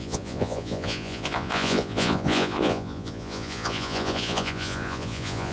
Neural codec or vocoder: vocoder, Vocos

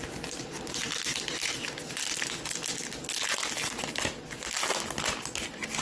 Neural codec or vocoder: none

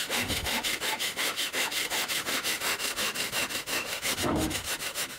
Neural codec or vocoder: autoencoder, DAC-VAE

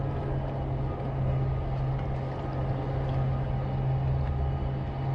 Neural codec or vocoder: none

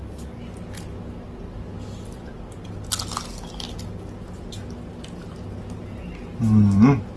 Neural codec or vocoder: none